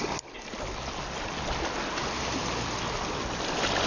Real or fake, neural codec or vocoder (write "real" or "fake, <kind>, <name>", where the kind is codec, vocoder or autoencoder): real